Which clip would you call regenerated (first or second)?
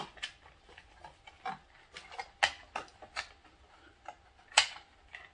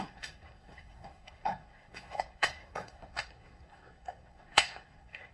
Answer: second